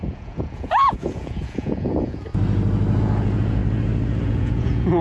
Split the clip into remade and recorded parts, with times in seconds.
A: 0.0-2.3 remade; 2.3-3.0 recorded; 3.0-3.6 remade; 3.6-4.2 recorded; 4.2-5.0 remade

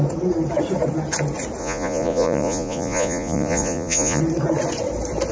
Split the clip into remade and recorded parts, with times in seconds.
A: 0.0-1.6 recorded; 1.6-4.2 remade; 4.2-5.3 recorded